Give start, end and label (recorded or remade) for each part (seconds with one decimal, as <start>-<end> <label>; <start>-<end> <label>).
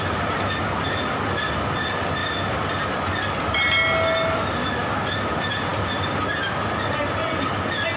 0.0-2.2 recorded; 2.2-2.8 remade; 2.8-5.7 recorded; 5.7-6.2 remade; 6.2-8.0 recorded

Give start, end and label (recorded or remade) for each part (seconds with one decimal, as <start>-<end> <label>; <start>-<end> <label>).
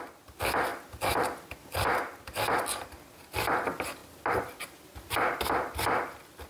0.0-6.5 recorded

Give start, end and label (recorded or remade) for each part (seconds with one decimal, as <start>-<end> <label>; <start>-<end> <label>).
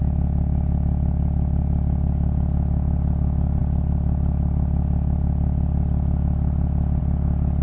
0.0-7.6 recorded